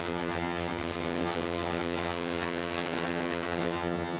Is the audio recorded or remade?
remade